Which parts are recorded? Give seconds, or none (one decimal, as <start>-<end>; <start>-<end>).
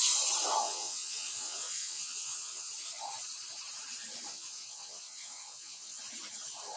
0.0-0.6; 2.7-4.3; 6.0-6.8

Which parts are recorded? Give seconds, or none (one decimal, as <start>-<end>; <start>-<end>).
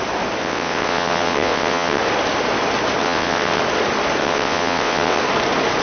0.0-0.4; 2.0-3.0; 3.6-4.2; 5.2-5.8